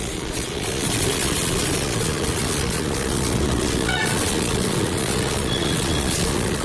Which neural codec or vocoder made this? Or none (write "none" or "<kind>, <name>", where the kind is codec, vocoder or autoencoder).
vocoder, Vocos